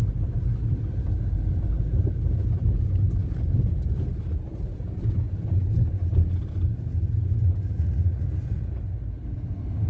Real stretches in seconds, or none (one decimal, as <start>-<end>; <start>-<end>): 0.0-7.7; 8.8-9.9